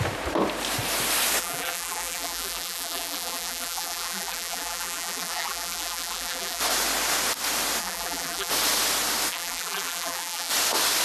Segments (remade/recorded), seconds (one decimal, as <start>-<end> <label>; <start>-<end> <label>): 0.0-1.4 recorded; 1.4-6.6 remade; 6.6-7.8 recorded; 7.8-8.5 remade; 8.5-9.3 recorded; 9.3-10.5 remade; 10.5-11.0 recorded

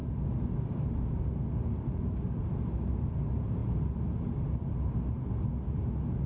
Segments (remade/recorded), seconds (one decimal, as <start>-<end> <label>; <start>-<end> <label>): 0.0-6.3 recorded

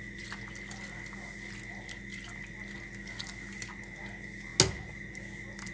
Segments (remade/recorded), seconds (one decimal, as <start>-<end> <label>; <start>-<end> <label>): 0.0-5.7 recorded

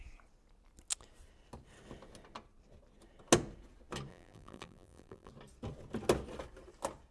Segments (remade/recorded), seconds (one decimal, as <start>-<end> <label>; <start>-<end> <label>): 0.0-4.1 recorded; 4.1-5.3 remade; 5.3-7.1 recorded

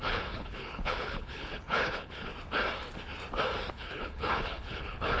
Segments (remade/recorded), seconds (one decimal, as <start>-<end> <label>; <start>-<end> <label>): 0.0-2.3 remade; 2.3-3.7 recorded; 3.7-5.2 remade

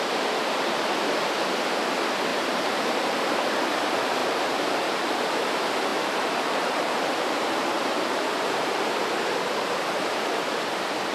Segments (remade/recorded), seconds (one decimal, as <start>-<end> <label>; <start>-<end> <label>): 0.0-2.3 recorded; 2.3-3.2 remade; 3.2-4.2 recorded; 4.2-5.5 remade; 5.5-5.9 recorded; 5.9-8.7 remade; 8.7-11.1 recorded

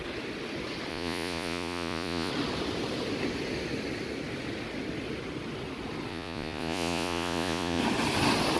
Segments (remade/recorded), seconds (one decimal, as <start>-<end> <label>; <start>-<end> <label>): 0.0-0.9 recorded; 0.9-2.3 remade; 2.3-6.1 recorded; 6.1-7.8 remade; 7.8-8.6 recorded